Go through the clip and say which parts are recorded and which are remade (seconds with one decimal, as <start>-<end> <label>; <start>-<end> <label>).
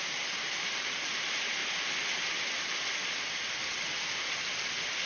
0.0-1.6 remade; 1.6-5.1 recorded